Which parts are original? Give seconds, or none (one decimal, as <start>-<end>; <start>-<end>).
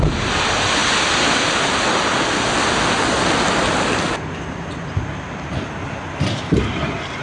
0.0-7.2